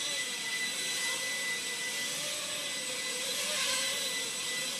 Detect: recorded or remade recorded